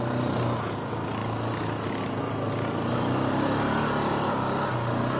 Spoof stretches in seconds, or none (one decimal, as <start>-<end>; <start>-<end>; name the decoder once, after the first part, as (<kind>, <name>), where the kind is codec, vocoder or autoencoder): none